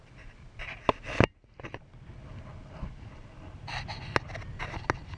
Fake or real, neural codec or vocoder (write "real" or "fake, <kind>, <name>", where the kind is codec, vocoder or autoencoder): real